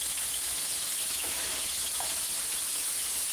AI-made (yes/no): yes